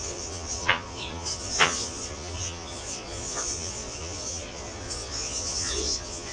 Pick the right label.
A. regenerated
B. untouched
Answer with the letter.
A